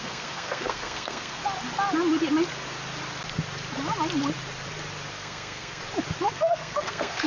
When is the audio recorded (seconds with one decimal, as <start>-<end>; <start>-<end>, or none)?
1.4-5.1; 5.8-6.3